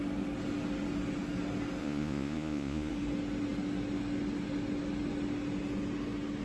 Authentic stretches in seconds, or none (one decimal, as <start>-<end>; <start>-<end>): 0.0-1.8; 2.9-6.4